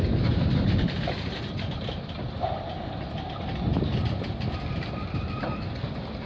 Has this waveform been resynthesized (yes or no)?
no